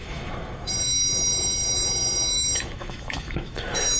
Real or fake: fake